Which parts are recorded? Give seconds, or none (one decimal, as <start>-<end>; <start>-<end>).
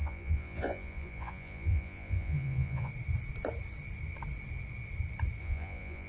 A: 2.9-5.4